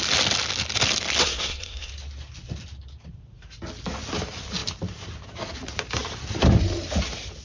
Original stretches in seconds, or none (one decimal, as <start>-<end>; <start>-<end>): 0.0-1.2; 1.9-7.4